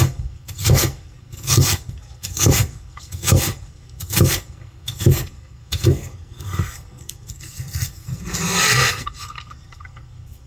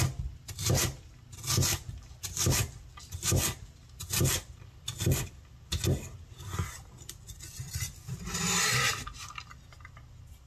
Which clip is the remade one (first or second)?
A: first